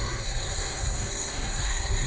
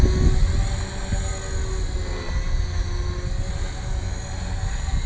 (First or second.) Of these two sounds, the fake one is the first